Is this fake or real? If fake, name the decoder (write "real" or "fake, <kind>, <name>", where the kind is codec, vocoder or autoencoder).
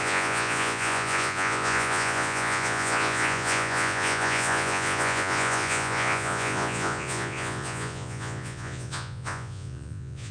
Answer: fake, vocoder, Vocos